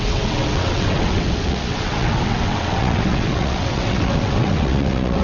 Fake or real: fake